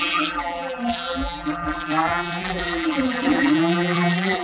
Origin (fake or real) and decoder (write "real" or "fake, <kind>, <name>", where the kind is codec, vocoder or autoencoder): fake, vocoder, BigVGAN v2